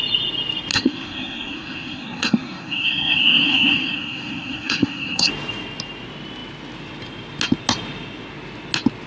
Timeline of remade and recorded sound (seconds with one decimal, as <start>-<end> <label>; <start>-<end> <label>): 0.0-0.7 recorded; 0.7-5.3 remade; 5.3-9.1 recorded